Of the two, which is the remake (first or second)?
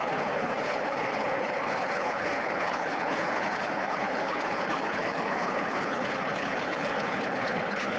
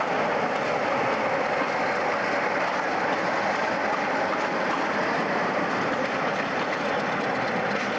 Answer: first